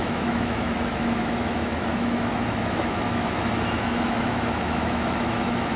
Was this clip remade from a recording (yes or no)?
yes